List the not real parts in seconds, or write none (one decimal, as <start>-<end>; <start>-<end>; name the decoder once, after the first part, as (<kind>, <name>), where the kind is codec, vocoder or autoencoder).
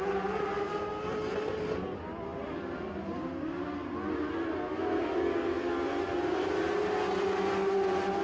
none